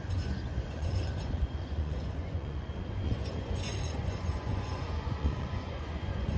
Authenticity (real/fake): fake